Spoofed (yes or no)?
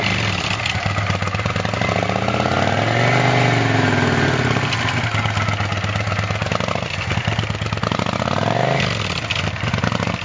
no